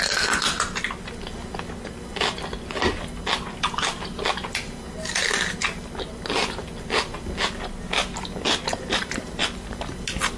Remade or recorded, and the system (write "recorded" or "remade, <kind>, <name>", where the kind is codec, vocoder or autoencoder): recorded